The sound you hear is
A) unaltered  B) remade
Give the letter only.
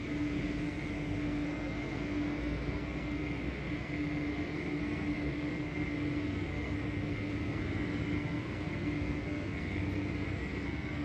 B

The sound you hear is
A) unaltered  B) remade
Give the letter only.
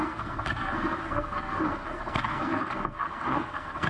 B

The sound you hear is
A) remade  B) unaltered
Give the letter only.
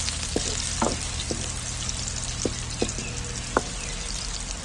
B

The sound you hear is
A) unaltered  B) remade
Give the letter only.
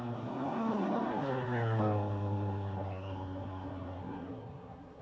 B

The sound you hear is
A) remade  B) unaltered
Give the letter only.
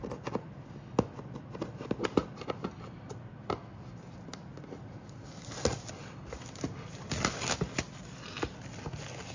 B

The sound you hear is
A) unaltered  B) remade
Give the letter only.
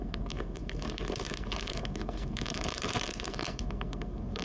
B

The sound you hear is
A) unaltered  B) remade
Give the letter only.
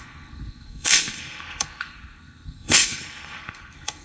B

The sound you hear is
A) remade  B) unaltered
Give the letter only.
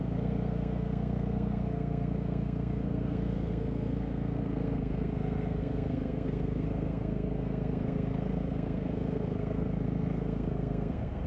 A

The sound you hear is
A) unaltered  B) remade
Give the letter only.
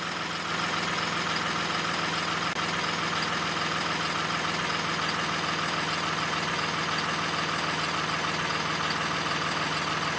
A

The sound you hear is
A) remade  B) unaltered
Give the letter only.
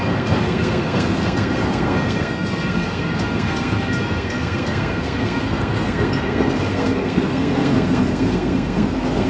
A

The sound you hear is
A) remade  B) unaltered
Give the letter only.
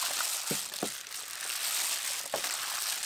B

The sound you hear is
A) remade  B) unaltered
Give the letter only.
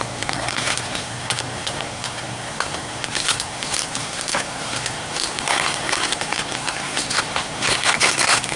A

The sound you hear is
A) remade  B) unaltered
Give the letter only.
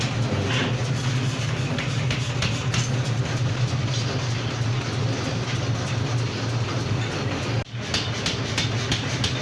B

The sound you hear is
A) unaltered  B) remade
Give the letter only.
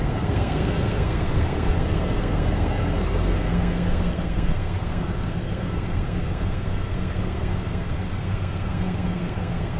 B